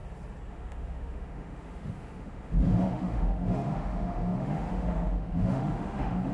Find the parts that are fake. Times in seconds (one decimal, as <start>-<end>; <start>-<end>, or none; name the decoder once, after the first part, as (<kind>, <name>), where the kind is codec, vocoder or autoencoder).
0.5-6.3 (autoencoder, DAC-VAE)